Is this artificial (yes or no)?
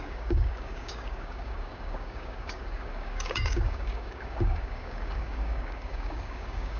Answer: yes